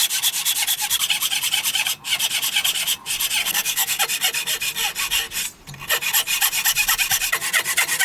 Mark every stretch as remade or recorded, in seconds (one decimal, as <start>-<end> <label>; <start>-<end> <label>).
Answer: 0.0-3.4 recorded; 3.4-4.0 remade; 4.0-8.0 recorded